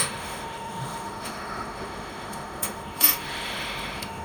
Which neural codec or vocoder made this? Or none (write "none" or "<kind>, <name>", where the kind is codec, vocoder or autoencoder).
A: autoencoder, DAC-VAE